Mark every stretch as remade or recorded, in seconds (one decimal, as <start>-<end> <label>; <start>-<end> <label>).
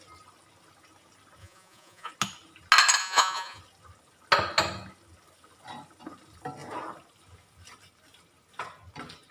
0.0-1.4 recorded; 1.4-2.1 remade; 2.1-3.0 recorded; 3.0-3.6 remade; 3.6-9.3 recorded